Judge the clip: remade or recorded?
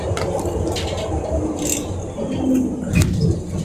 recorded